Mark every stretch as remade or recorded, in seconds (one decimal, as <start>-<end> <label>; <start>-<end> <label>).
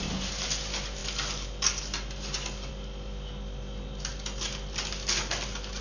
0.0-5.8 recorded